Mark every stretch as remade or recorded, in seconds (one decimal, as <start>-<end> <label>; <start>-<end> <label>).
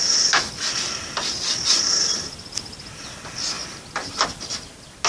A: 0.0-5.1 recorded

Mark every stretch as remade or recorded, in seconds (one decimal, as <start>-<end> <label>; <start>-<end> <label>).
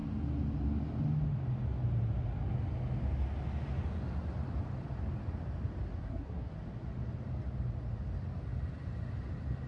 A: 0.0-6.0 recorded; 6.0-6.5 remade; 6.5-9.7 recorded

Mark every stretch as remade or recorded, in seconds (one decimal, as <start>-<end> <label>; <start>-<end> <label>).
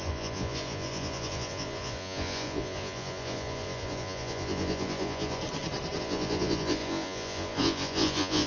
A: 0.0-5.4 remade; 5.4-6.0 recorded; 6.0-8.5 remade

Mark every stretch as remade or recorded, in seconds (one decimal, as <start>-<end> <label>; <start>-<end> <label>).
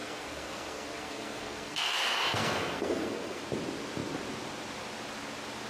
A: 0.0-3.4 remade; 3.4-5.7 recorded